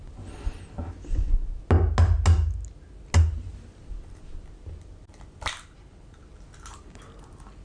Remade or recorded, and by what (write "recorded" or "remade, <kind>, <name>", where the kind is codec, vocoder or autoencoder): recorded